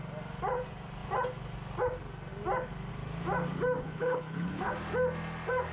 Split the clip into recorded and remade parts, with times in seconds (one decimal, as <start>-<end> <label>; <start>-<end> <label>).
0.0-3.8 recorded; 3.8-4.7 remade; 4.7-5.7 recorded